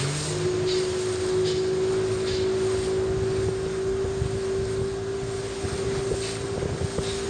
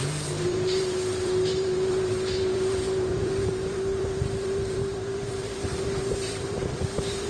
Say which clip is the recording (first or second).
first